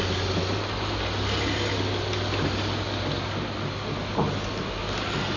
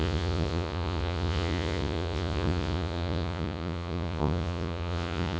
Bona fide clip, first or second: first